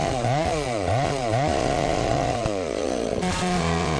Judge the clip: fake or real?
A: fake